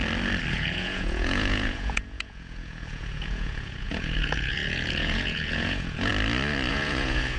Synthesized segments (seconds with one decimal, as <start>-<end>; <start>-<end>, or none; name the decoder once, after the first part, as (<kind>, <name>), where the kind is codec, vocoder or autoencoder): 0.5-6.1 (vocoder, Vocos); 6.7-7.4